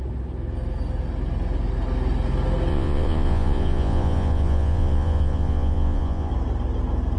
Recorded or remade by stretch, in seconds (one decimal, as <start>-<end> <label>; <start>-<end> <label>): 0.0-2.7 recorded; 2.7-6.3 remade; 6.3-7.2 recorded